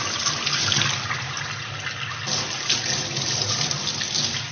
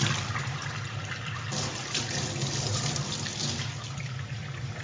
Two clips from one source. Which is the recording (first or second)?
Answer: first